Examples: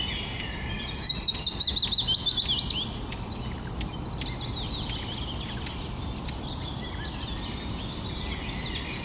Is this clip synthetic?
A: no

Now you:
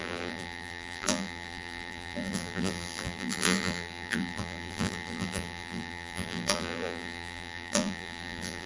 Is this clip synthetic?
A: yes